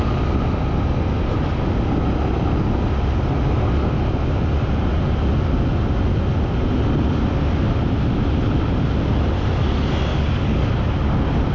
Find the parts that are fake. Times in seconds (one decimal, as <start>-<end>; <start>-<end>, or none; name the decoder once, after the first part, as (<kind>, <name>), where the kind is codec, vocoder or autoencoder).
10.1-10.7 (codec, DAC)